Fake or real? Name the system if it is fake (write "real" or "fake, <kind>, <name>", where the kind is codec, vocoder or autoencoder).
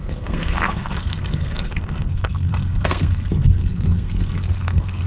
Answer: fake, codec, SNAC